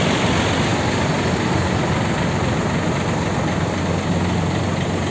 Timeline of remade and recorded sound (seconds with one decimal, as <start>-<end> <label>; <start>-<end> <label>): 0.0-5.1 recorded